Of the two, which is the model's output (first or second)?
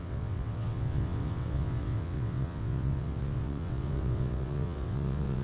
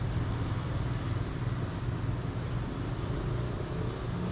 first